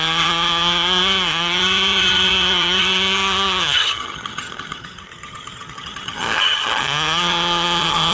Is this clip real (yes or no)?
no